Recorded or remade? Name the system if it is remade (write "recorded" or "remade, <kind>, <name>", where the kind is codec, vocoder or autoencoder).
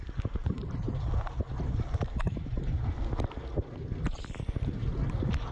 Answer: recorded